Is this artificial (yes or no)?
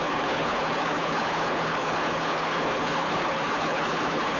yes